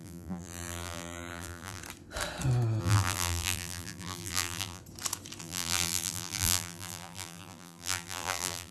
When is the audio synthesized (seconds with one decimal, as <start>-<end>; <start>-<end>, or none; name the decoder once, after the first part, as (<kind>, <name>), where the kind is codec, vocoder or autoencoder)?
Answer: 0.0-1.8 (vocoder, BigVGAN v2); 2.8-4.8; 5.4-8.7

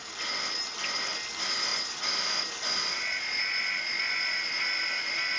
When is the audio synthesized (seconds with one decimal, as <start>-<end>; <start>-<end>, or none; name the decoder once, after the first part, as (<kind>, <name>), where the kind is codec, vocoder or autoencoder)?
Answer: none

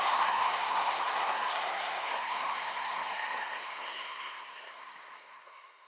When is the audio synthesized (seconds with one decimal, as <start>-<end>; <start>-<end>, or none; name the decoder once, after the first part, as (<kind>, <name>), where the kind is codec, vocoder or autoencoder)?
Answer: 0.0-5.9 (codec, SNAC)

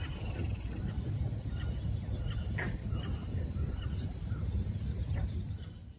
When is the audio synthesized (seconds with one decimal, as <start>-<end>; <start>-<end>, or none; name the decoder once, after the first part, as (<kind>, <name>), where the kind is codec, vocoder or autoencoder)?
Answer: 3.2-4.8 (vocoder, BigVGAN v2)

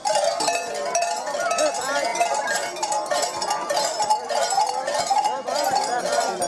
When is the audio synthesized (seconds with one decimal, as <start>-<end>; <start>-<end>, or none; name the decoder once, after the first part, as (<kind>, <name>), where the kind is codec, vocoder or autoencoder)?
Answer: 2.1-6.0 (vocoder, BigVGAN v2)

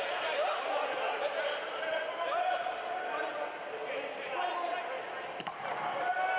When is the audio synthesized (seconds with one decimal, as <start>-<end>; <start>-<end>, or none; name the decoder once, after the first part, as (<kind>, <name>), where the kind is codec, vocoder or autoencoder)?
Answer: none

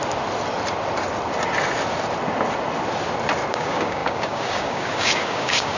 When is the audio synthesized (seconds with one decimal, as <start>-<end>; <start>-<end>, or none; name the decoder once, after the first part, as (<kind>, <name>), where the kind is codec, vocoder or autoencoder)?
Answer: 3.5-5.8 (codec, DAC)